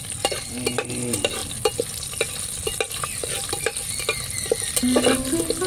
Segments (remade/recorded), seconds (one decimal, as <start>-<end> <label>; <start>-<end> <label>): 0.0-5.7 recorded

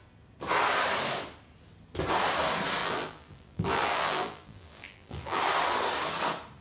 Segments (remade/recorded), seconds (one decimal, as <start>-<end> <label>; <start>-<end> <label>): 0.0-2.8 recorded; 2.8-5.4 remade; 5.4-6.6 recorded

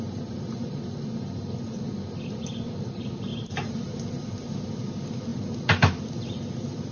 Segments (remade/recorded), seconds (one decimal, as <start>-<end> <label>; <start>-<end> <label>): 0.0-3.3 recorded; 3.3-4.0 remade; 4.0-6.9 recorded

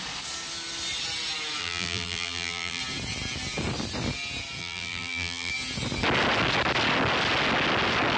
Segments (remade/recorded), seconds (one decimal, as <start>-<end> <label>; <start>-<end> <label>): 0.0-1.6 recorded; 1.6-2.8 remade; 2.8-4.6 recorded; 4.6-5.5 remade; 5.5-8.2 recorded

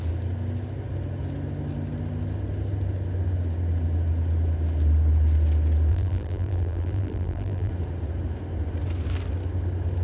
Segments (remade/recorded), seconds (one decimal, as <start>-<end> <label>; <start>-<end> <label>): 0.0-5.9 recorded; 5.9-7.7 remade; 7.7-10.0 recorded

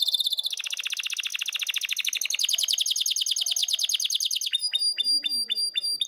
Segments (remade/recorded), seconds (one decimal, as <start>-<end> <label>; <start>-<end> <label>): 0.0-6.1 recorded

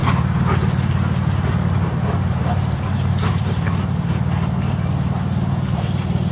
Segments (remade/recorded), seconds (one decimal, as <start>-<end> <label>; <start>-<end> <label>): 0.0-6.3 recorded